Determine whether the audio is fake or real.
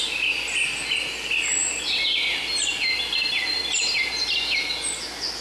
real